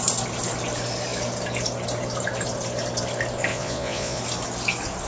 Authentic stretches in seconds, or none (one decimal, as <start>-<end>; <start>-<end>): 0.0-3.5; 4.2-5.1